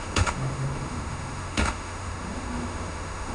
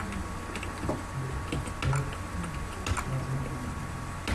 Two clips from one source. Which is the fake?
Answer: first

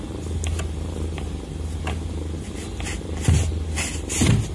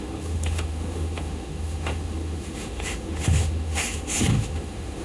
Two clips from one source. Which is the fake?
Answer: second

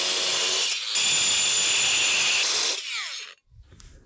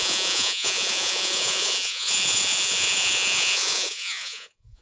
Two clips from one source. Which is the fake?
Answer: second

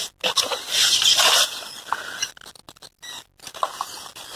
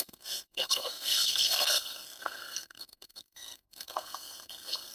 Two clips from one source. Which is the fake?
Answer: second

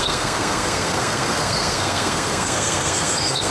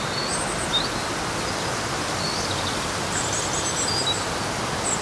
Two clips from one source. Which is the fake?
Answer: first